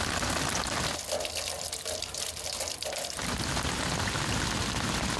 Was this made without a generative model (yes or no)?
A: yes